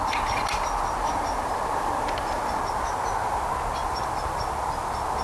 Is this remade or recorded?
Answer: recorded